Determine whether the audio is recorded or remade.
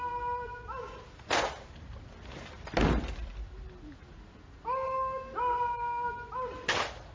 recorded